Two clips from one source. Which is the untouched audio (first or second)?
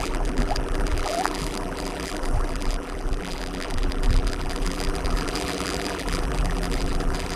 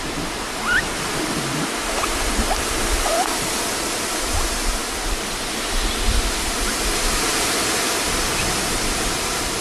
second